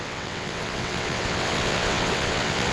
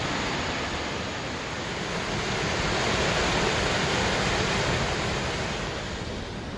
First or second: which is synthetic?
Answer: first